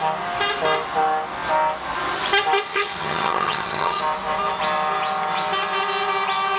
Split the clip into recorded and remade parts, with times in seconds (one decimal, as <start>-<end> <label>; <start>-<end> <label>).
0.0-2.7 recorded; 2.7-4.0 remade; 4.0-6.6 recorded